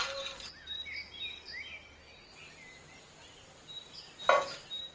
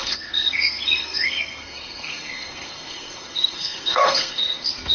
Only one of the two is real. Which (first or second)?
first